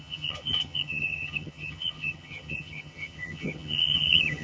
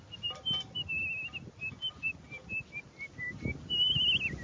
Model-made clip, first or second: first